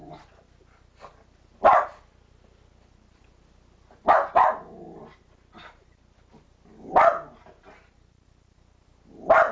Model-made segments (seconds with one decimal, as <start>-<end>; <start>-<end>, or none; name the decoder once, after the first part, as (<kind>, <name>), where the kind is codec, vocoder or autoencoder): none